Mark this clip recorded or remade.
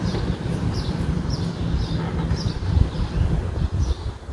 recorded